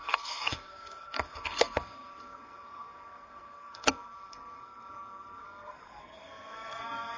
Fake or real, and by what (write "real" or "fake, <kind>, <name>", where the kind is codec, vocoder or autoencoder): fake, codec, SNAC